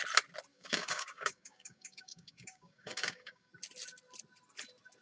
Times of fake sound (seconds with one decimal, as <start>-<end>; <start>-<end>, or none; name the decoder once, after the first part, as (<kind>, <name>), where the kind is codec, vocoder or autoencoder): 0.5-3.5 (codec, DAC)